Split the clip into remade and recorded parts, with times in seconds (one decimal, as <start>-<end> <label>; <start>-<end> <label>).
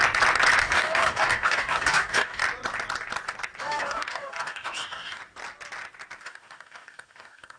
0.0-0.6 recorded; 0.6-2.4 remade; 2.4-3.6 recorded; 3.6-5.2 remade; 5.2-6.2 recorded; 6.2-7.6 remade